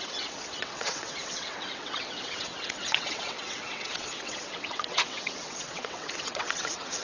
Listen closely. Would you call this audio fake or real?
fake